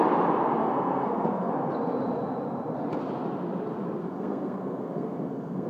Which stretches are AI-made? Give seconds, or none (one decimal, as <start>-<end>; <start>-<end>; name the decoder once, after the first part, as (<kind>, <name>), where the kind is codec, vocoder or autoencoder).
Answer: 0.6-1.5 (codec, SNAC); 4.0-5.7